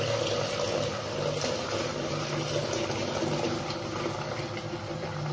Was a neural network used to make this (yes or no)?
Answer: no